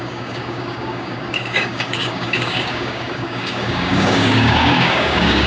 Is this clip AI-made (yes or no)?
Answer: yes